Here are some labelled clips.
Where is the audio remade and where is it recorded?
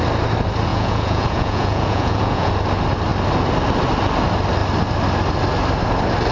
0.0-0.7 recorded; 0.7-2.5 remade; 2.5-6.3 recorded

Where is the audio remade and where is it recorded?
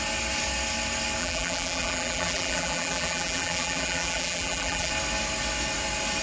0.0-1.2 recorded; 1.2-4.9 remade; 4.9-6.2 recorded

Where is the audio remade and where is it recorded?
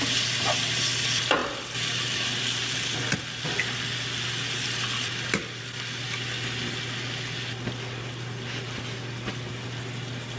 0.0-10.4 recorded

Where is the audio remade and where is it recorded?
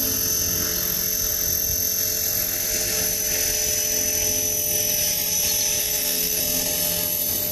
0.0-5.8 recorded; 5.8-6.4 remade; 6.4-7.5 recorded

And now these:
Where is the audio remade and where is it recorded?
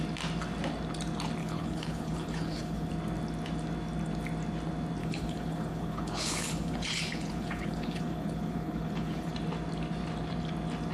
0.0-1.4 recorded; 1.4-2.9 remade; 2.9-5.0 recorded; 5.0-9.3 remade; 9.3-10.9 recorded